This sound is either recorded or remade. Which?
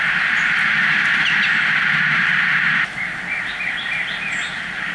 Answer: recorded